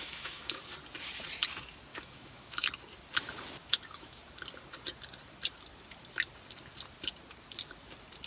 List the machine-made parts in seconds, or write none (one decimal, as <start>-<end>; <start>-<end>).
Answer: 0.0-0.6; 1.9-2.7; 3.6-4.2